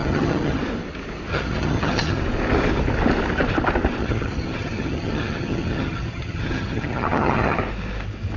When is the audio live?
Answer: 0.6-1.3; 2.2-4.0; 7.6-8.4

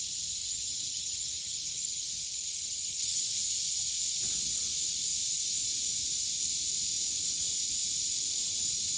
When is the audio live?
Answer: 0.0-0.4; 2.1-2.5; 3.4-9.0

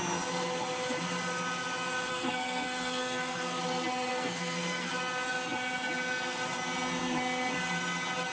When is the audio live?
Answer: 0.0-2.1; 3.6-4.1; 4.9-8.3

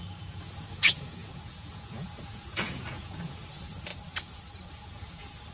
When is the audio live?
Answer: 3.9-4.7

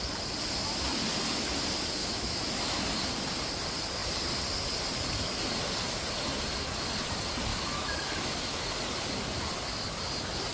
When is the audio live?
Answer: 0.0-2.0; 2.8-7.5; 8.7-10.5

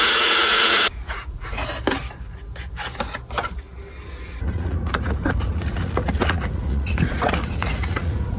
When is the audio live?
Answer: 1.6-4.4

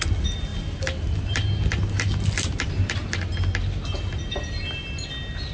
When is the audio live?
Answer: 0.0-5.5